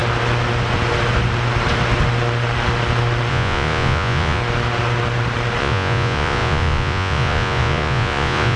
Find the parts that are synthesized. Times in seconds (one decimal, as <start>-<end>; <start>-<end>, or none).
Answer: 3.3-4.4; 5.6-8.6